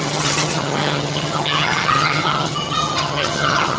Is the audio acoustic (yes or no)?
no